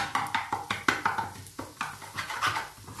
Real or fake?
real